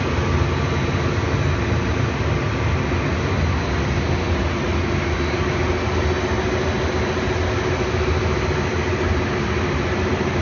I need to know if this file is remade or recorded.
recorded